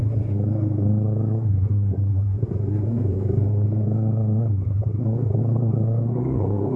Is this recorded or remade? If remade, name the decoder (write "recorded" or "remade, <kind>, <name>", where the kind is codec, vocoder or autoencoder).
remade, codec, SNAC